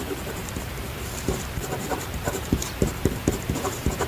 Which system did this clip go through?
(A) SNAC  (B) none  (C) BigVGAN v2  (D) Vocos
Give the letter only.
C